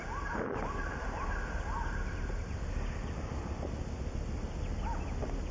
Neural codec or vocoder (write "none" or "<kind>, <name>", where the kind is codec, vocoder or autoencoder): none